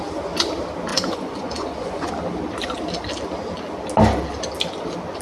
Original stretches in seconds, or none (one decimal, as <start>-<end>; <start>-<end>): 0.0-0.9; 2.1-5.2